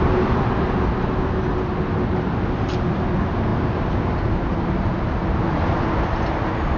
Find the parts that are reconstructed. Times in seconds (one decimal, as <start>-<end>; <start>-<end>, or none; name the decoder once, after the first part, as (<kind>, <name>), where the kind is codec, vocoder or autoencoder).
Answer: none